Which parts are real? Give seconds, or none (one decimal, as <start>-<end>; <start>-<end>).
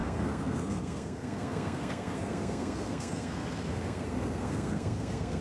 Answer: none